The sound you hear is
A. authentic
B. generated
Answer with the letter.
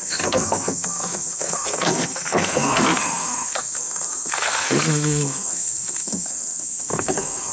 B